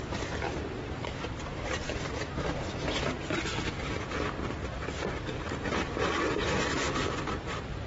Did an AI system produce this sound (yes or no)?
yes